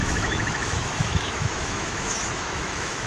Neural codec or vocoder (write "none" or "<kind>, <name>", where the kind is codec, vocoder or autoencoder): autoencoder, DAC-VAE